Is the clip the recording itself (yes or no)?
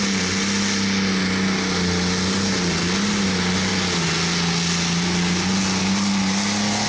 yes